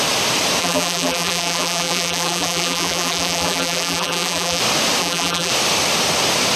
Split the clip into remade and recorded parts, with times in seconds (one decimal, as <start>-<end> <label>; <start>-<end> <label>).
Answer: 0.0-0.6 recorded; 0.6-4.6 remade; 4.6-5.0 recorded; 5.0-5.5 remade; 5.5-6.6 recorded